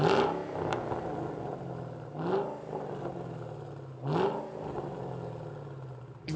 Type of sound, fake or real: real